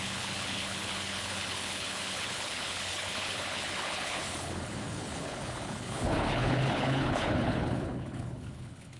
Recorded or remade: remade